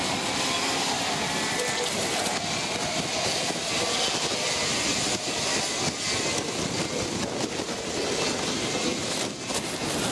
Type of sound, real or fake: real